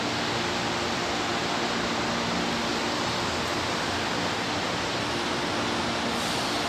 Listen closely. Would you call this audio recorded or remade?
recorded